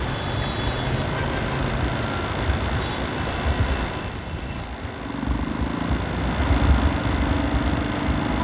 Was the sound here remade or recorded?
recorded